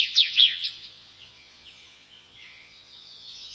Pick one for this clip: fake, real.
fake